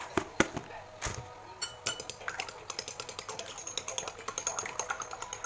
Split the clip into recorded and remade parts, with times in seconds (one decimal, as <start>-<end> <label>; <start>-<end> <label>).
0.0-5.5 recorded